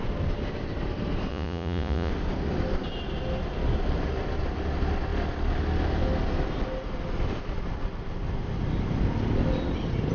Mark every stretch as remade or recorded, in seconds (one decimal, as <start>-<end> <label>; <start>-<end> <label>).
0.0-1.3 recorded; 1.3-2.1 remade; 2.1-10.1 recorded

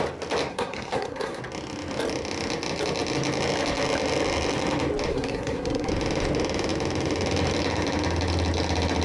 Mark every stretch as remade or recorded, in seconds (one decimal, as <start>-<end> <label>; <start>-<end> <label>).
0.0-0.5 recorded; 0.5-1.4 remade; 1.4-5.1 recorded; 5.1-5.9 remade; 5.9-9.0 recorded

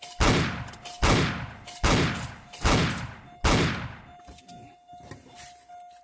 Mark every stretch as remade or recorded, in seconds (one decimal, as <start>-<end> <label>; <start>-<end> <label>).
0.0-6.0 recorded

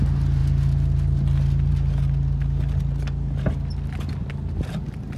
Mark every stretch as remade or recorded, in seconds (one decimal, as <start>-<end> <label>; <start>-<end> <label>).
0.0-5.2 recorded

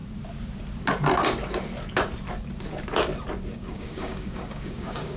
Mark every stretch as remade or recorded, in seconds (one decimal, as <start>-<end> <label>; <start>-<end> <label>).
0.0-3.5 recorded; 3.5-5.2 remade

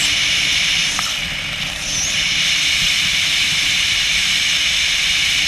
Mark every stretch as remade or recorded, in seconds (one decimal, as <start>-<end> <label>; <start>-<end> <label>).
0.0-3.4 recorded; 3.4-4.1 remade; 4.1-5.5 recorded

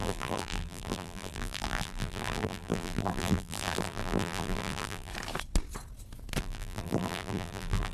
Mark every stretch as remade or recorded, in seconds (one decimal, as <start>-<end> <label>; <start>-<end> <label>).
0.0-5.1 remade; 5.1-6.4 recorded; 6.4-7.9 remade